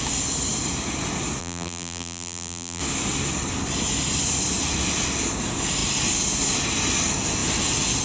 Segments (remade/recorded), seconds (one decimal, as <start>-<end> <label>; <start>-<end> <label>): 0.0-1.4 recorded; 1.4-2.8 remade; 2.8-8.0 recorded